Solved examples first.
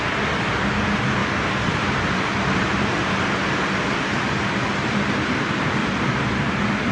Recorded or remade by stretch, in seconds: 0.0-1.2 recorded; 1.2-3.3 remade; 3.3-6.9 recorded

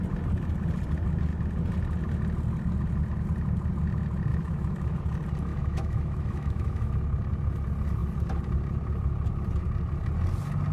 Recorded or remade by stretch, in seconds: 0.0-4.3 recorded; 4.3-5.0 remade; 5.0-5.5 recorded; 5.5-6.9 remade; 6.9-10.7 recorded

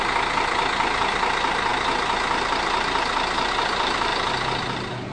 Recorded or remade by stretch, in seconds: 0.0-4.1 recorded; 4.1-5.1 remade

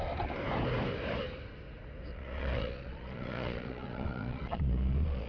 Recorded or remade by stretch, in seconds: 0.0-2.1 recorded; 2.1-5.3 remade

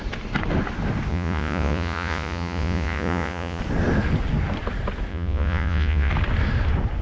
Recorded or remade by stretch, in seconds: 0.0-1.1 recorded; 1.1-3.6 remade; 3.6-5.1 recorded; 5.1-6.1 remade; 6.1-7.0 recorded